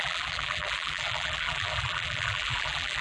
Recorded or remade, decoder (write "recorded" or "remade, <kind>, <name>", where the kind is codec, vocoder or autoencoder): remade, vocoder, BigVGAN v2